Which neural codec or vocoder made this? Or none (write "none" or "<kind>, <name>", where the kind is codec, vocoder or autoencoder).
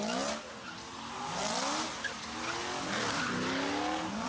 none